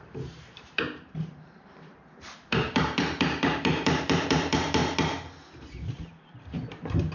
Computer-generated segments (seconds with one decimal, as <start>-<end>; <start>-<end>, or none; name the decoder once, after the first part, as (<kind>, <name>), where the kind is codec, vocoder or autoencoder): 0.0-4.8 (vocoder, BigVGAN v2); 5.6-7.1